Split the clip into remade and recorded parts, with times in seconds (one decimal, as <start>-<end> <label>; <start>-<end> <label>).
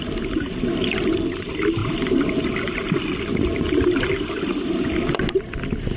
0.0-6.0 recorded